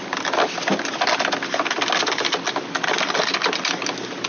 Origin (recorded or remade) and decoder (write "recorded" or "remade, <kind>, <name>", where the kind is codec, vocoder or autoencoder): recorded